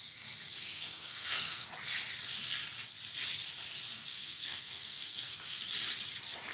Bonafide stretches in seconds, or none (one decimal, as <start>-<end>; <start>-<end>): 0.0-0.6; 1.7-4.1; 5.6-6.5